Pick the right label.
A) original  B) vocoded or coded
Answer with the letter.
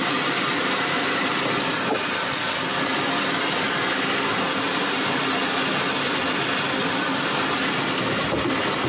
A